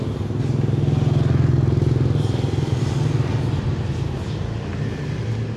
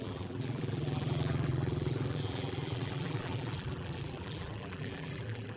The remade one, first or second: second